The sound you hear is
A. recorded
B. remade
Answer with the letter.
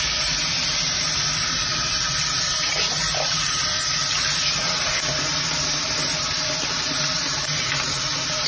B